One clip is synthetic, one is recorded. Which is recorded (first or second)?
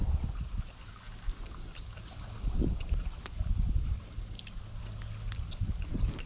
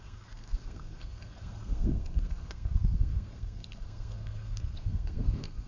first